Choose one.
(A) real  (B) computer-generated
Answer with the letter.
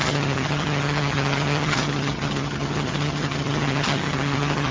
B